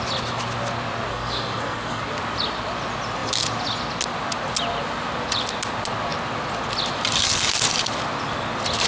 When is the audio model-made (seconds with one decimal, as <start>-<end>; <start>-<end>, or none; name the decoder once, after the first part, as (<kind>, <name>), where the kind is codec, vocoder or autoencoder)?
1.1-2.0 (codec, SNAC)